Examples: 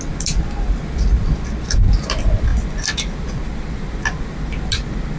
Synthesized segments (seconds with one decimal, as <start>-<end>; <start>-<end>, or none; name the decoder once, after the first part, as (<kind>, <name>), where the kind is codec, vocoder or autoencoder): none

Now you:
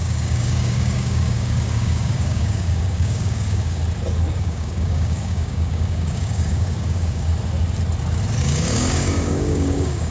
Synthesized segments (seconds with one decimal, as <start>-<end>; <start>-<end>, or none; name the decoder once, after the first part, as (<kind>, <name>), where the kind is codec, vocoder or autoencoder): 0.0-3.8 (codec, DAC); 4.3-7.3; 8.4-10.1

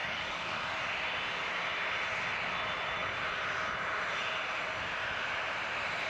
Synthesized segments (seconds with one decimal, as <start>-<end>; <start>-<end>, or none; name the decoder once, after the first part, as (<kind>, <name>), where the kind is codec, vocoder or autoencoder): 0.0-0.6 (codec, DAC)

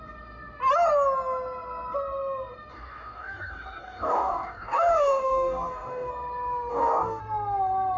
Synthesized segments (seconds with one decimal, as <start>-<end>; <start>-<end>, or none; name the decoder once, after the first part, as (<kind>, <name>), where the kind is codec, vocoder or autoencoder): 2.7-6.1 (codec, DAC); 6.7-7.2

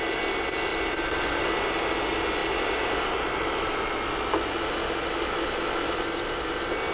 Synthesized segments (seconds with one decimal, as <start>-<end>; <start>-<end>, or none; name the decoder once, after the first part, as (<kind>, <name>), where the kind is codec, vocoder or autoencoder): none

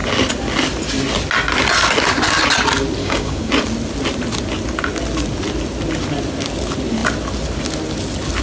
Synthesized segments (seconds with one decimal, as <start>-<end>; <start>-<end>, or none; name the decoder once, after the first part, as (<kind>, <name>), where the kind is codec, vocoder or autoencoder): 3.0-3.5 (codec, DAC)